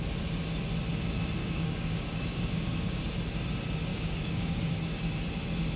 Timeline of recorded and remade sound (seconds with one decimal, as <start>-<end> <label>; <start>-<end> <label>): 0.0-1.4 recorded; 1.4-3.0 remade; 3.0-3.9 recorded; 3.9-5.0 remade; 5.0-5.8 recorded